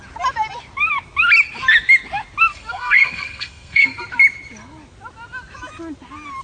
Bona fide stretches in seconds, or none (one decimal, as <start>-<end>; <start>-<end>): 0.0-2.5; 4.0-6.4